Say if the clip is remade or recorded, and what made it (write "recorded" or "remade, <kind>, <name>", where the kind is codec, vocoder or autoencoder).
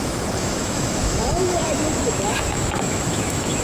remade, autoencoder, DAC-VAE